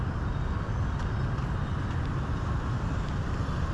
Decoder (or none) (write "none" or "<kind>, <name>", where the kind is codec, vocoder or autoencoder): none